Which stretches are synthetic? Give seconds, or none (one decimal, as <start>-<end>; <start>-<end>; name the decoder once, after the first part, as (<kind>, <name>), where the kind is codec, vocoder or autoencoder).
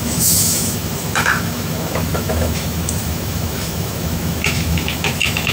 0.0-5.5 (autoencoder, DAC-VAE)